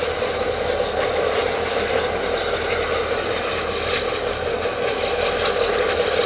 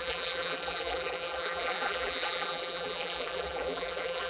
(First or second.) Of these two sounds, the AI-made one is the second